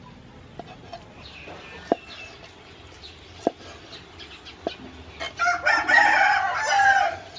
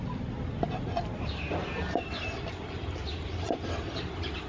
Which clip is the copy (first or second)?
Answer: second